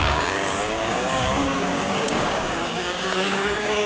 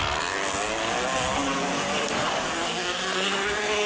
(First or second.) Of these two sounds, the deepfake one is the first